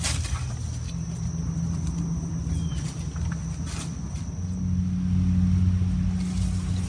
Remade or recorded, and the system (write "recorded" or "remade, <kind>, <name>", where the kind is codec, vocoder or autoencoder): recorded